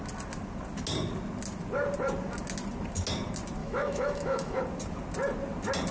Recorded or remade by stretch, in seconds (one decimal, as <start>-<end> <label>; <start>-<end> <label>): 0.0-3.6 recorded; 3.6-4.6 remade; 4.6-5.9 recorded